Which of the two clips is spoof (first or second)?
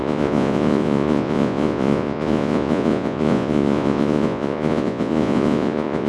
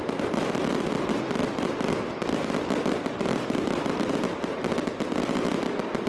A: first